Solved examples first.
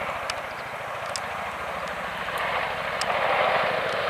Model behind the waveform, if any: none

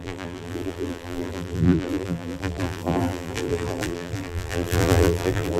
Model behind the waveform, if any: vocoder, BigVGAN v2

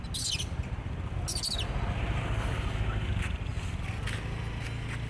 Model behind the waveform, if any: none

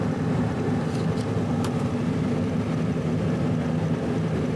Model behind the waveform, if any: none